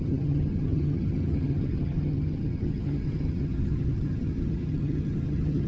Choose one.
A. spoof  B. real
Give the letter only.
A